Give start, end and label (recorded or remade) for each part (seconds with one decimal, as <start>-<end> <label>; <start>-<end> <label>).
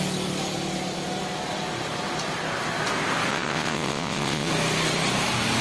0.0-3.3 recorded; 3.3-4.5 remade; 4.5-5.6 recorded